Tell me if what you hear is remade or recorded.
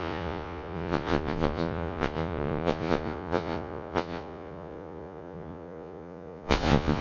remade